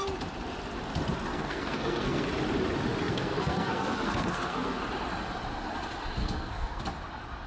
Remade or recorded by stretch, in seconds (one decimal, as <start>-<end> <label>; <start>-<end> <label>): 0.0-1.3 recorded; 1.3-2.3 remade; 2.3-3.0 recorded; 3.0-4.8 remade; 4.8-6.2 recorded; 6.2-6.8 remade; 6.8-7.5 recorded

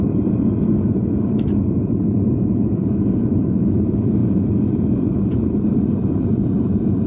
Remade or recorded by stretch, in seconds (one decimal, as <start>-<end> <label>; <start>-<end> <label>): 0.0-7.1 recorded

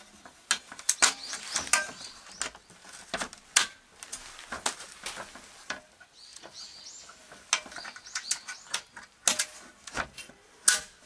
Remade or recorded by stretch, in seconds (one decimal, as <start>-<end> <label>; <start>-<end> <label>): 0.0-11.1 recorded

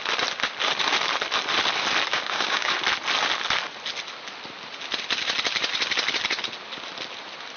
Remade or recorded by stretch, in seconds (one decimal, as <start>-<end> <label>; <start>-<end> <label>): 0.0-2.1 recorded; 2.1-2.7 remade; 2.7-7.6 recorded

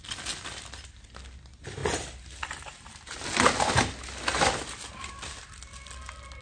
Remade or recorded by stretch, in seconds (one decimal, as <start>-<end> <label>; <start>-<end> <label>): 0.0-6.4 recorded

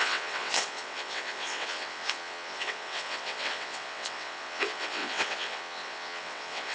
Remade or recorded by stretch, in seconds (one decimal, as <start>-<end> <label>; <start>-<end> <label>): 0.0-6.7 remade

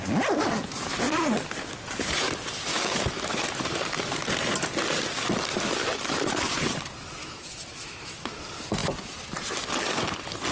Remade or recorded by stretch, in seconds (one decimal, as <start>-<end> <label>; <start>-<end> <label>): 0.0-2.7 recorded; 2.7-3.4 remade; 3.4-7.2 recorded; 7.2-8.4 remade; 8.4-10.5 recorded

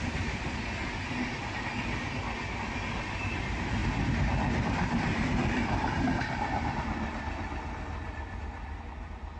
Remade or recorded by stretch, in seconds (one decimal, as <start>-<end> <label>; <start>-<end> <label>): 0.0-9.4 recorded